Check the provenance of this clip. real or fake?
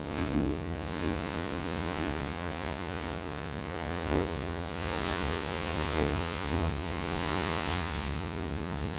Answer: fake